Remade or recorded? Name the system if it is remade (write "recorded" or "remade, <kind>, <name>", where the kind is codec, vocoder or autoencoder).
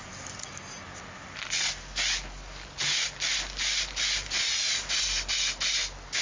recorded